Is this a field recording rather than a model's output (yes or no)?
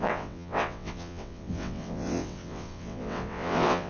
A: no